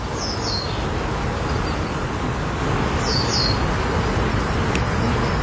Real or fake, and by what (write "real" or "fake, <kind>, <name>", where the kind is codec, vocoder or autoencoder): real